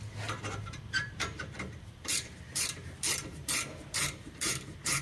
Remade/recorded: remade